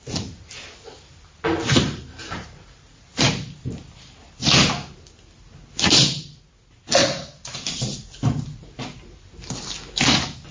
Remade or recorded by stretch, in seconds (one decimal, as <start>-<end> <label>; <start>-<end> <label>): 0.0-10.5 recorded